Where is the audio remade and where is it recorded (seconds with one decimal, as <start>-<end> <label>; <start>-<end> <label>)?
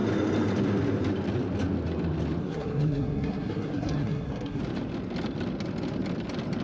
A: 0.0-2.4 recorded; 2.4-4.6 remade; 4.6-6.6 recorded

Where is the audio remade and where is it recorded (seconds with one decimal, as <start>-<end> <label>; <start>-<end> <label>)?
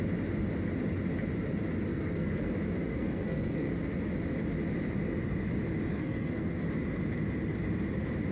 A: 0.0-1.9 recorded; 1.9-2.5 remade; 2.5-2.9 recorded; 2.9-3.7 remade; 3.7-5.9 recorded; 5.9-6.6 remade; 6.6-8.3 recorded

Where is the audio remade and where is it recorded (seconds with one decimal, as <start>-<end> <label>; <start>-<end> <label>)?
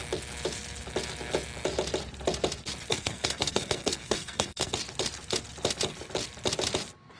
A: 0.0-2.9 recorded; 2.9-4.7 remade; 4.7-7.2 recorded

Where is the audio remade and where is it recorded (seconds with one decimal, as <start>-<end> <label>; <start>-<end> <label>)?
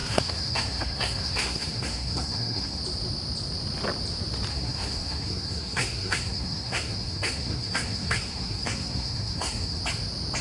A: 0.0-2.8 remade; 2.8-4.5 recorded; 4.5-9.8 remade; 9.8-10.4 recorded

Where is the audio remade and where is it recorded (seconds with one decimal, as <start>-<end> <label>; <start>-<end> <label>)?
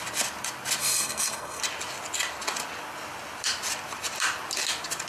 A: 0.0-0.8 recorded; 0.8-1.6 remade; 1.6-5.1 recorded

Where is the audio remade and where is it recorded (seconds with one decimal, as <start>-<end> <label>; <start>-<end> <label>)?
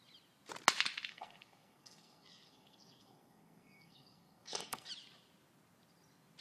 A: 0.0-1.1 recorded; 1.1-4.9 remade; 4.9-6.4 recorded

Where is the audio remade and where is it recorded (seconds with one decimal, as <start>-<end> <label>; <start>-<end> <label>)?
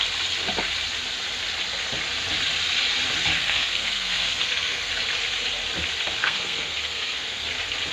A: 0.0-3.4 recorded; 3.4-4.9 remade; 4.9-6.2 recorded; 6.2-7.5 remade; 7.5-7.9 recorded